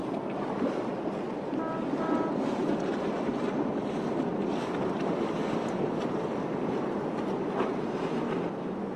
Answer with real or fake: real